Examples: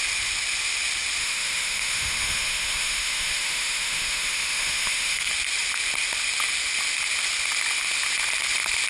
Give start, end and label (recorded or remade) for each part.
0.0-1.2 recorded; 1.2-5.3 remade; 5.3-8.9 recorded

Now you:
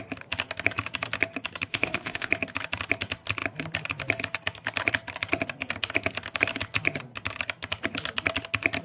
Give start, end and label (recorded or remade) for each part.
0.0-1.7 recorded; 1.7-2.3 remade; 2.3-8.8 recorded

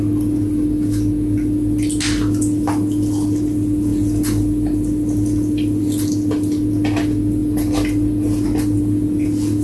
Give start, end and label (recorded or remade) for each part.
0.0-9.6 recorded

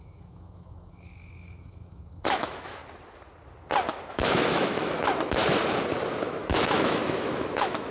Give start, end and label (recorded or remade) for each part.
0.0-2.8 remade; 2.8-4.1 recorded; 4.1-5.4 remade; 5.4-6.1 recorded; 6.1-7.9 remade

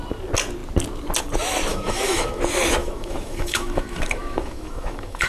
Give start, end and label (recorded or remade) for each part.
0.0-1.7 recorded; 1.7-2.4 remade; 2.4-2.8 recorded; 2.8-5.3 remade

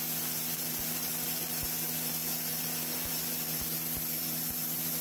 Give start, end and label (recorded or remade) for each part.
0.0-5.0 recorded

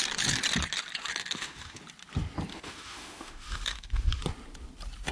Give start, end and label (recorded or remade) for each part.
0.0-1.2 recorded; 1.2-1.8 remade; 1.8-2.5 recorded; 2.5-4.2 remade; 4.2-5.1 recorded